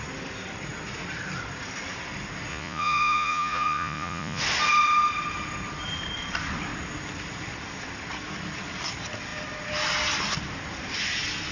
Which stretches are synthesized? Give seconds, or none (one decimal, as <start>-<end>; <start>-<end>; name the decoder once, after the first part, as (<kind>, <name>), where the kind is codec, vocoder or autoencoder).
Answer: 2.5-4.4 (vocoder, Vocos)